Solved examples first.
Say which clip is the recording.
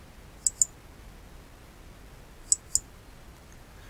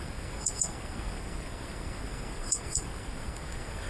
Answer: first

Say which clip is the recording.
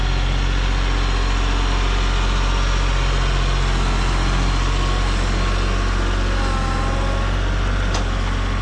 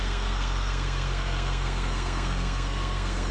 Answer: first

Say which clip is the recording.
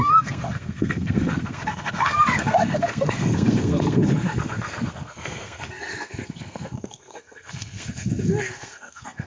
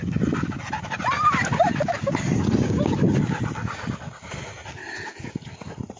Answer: second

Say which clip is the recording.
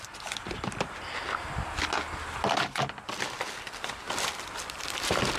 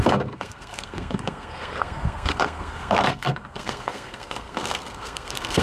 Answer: first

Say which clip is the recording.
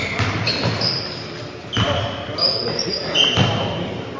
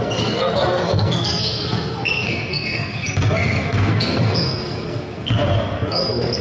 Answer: first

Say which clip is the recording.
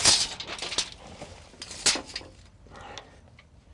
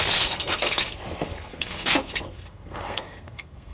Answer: first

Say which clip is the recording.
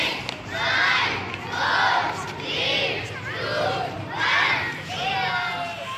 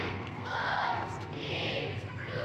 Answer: first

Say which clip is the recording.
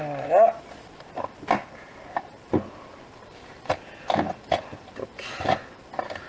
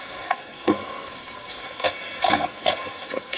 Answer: first